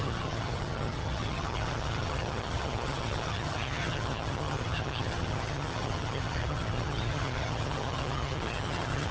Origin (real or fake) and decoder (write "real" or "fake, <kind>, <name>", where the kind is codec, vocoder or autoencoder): fake, vocoder, HiFi-GAN